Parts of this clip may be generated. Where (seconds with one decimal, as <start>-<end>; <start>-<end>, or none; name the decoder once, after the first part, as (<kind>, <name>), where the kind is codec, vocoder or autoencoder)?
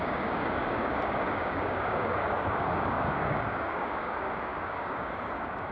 0.0-5.7 (codec, DAC)